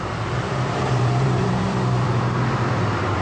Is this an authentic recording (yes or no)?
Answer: no